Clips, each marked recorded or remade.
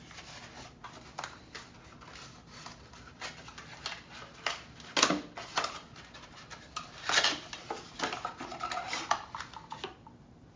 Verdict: recorded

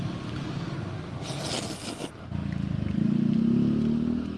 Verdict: recorded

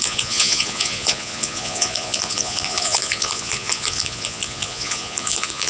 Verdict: remade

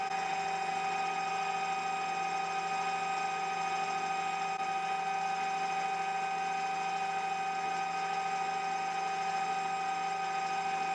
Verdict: recorded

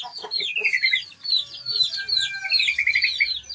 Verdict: recorded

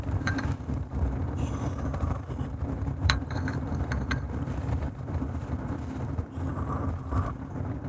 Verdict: remade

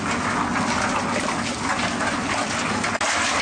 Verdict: recorded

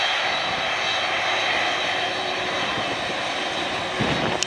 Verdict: recorded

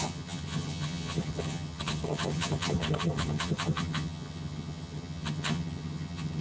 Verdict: remade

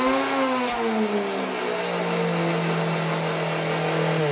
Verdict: recorded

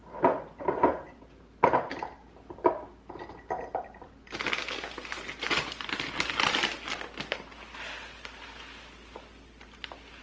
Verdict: recorded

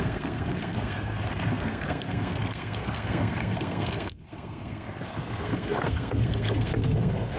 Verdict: remade